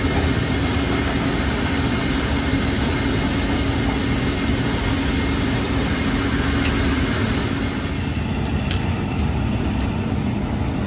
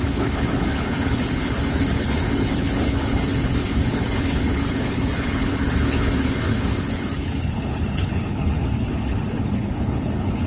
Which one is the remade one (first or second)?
second